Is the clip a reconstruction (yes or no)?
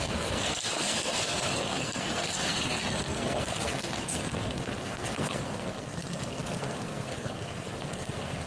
yes